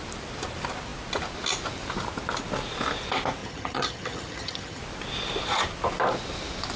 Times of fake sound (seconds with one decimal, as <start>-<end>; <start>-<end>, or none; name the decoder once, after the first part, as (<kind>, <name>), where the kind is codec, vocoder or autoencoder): 3.4-4.8 (vocoder, HiFi-GAN)